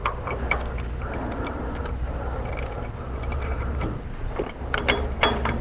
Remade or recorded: remade